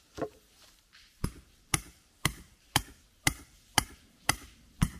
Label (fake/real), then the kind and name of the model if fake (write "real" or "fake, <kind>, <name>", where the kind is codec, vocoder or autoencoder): fake, vocoder, BigVGAN v2